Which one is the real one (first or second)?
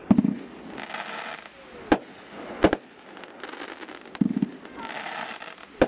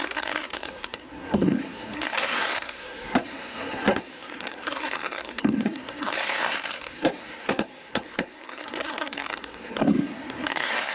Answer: first